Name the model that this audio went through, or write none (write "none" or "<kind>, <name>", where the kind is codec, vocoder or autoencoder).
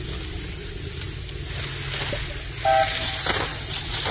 none